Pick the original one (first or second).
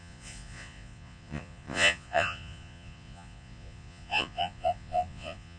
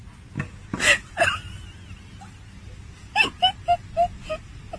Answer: second